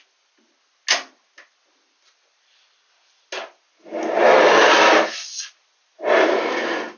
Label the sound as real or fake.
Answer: real